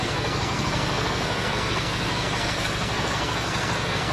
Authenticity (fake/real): fake